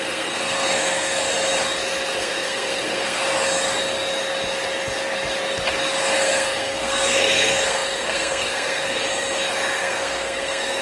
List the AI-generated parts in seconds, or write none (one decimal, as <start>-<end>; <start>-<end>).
0.0-1.2; 2.2-3.2; 6.2-9.0; 9.8-10.8